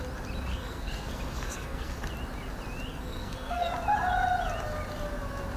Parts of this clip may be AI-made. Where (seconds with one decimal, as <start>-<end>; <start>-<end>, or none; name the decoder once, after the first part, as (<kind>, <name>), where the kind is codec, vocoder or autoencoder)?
0.5-2.1 (codec, SNAC); 2.9-3.7